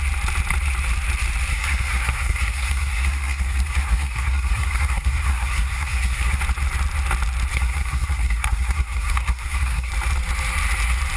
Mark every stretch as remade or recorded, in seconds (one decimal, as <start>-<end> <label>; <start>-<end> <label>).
0.0-1.5 recorded; 1.5-6.4 remade; 6.4-7.5 recorded; 7.5-9.9 remade; 9.9-11.2 recorded

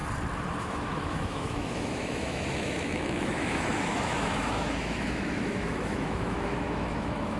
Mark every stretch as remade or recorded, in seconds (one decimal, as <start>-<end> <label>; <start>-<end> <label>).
0.0-0.6 recorded; 0.6-7.4 remade

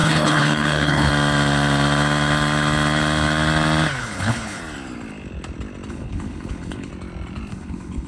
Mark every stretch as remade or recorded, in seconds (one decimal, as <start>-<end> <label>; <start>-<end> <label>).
0.0-1.1 remade; 1.1-4.0 recorded; 4.0-4.6 remade; 4.6-5.9 recorded; 5.9-6.9 remade; 6.9-7.5 recorded; 7.5-8.1 remade

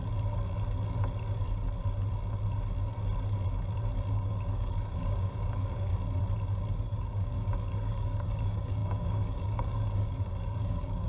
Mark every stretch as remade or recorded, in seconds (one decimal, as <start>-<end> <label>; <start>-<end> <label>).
0.0-4.1 recorded; 4.1-5.9 remade; 5.9-6.7 recorded; 6.7-11.1 remade